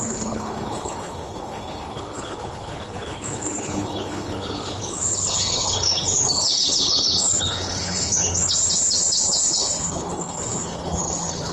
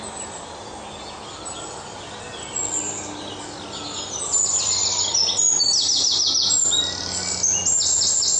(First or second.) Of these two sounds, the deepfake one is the first